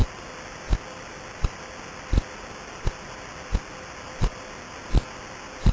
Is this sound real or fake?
real